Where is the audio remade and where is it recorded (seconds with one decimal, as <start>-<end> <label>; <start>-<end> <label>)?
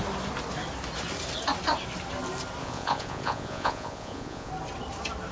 0.0-2.6 recorded; 2.6-4.5 remade; 4.5-5.3 recorded